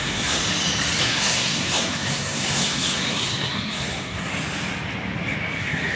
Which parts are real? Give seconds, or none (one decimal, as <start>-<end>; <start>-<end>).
0.4-1.0; 4.3-5.6